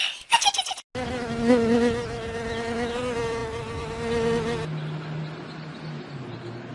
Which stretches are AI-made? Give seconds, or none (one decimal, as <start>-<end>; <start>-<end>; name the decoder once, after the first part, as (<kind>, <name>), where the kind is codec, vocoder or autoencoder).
none